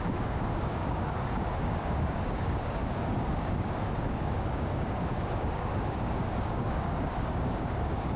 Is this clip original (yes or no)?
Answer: no